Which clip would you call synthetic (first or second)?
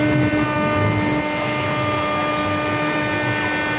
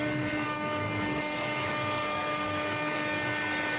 second